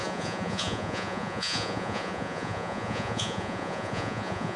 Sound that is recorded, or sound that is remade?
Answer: remade